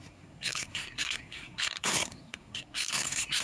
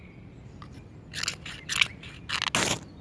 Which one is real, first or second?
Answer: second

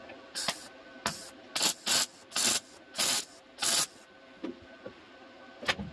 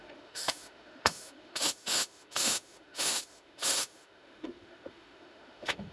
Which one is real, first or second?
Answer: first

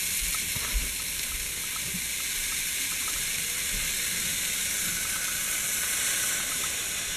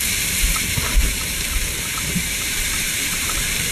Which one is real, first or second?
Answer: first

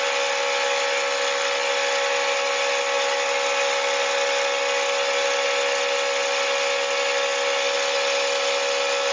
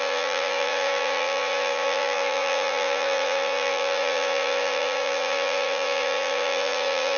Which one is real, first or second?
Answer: first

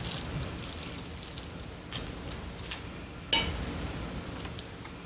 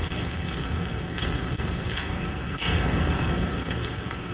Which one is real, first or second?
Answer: first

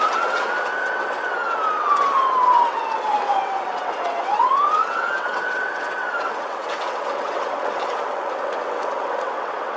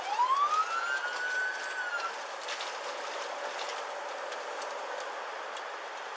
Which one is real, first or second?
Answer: second